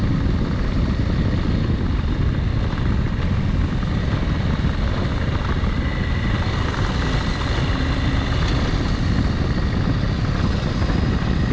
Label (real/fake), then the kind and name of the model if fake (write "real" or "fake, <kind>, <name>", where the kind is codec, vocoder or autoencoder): real